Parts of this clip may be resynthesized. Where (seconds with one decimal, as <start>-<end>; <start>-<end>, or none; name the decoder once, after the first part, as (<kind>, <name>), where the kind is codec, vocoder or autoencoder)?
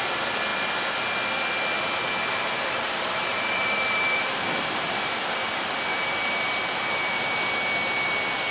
3.3-5.5 (vocoder, BigVGAN v2); 5.9-7.2